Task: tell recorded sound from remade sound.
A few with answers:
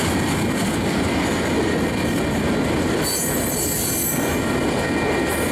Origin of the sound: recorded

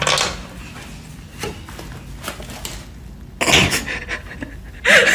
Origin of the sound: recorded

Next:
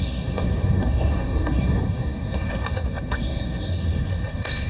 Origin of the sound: remade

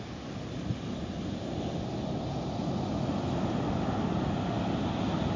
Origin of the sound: recorded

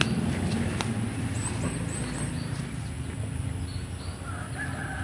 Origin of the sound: remade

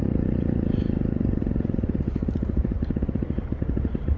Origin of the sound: recorded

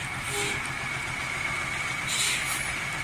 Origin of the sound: recorded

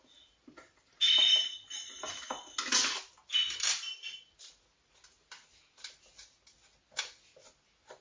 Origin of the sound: recorded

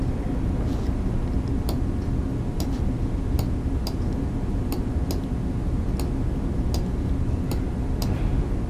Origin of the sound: recorded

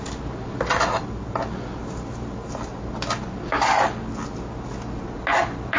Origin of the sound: recorded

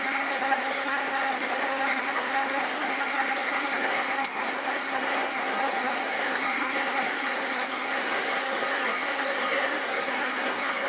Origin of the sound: remade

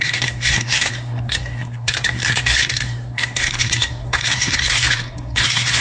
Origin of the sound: remade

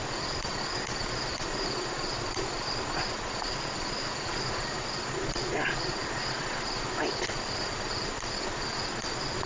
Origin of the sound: remade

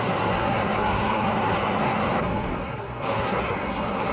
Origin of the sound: remade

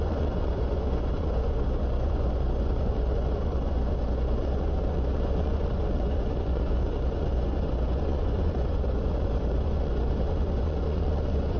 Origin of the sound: remade